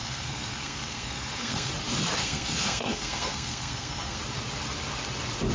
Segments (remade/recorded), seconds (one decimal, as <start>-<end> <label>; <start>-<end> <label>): 0.0-1.7 remade; 1.7-2.2 recorded; 2.2-4.2 remade; 4.2-5.5 recorded